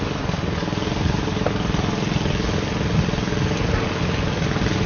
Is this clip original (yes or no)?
yes